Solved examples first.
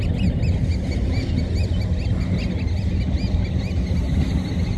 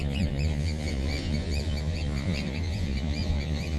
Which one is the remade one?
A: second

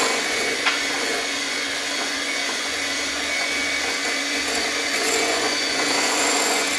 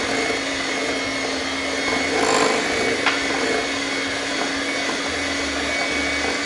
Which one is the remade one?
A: first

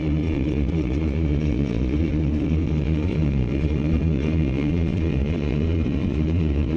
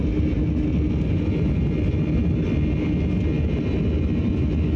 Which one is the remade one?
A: first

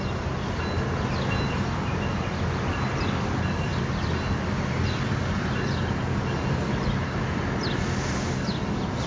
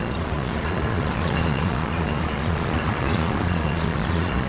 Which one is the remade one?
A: second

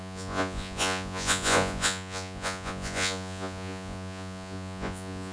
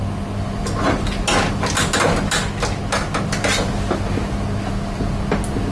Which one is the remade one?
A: first